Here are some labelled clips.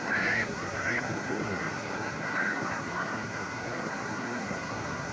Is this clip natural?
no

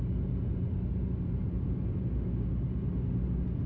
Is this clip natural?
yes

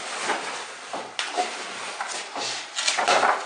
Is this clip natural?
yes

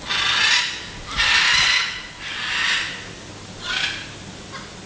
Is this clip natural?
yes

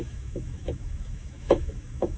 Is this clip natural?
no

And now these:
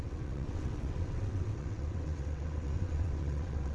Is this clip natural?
no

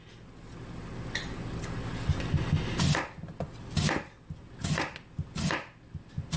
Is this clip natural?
yes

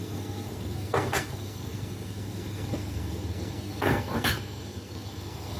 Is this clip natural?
no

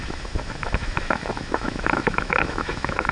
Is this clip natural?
no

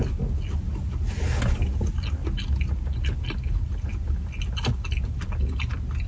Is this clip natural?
yes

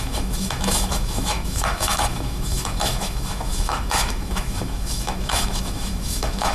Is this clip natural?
no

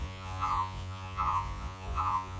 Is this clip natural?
no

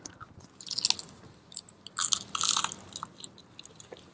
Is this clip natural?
yes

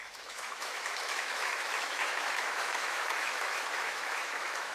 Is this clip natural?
no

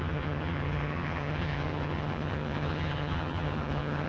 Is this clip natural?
no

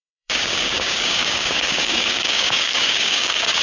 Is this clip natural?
no